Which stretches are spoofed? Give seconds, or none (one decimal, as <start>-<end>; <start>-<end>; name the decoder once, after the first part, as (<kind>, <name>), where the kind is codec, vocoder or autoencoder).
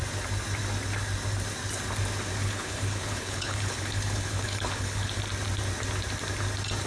2.4-5.2 (codec, HILCodec)